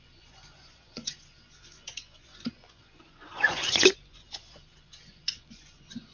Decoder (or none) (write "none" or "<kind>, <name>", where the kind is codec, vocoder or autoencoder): vocoder, Vocos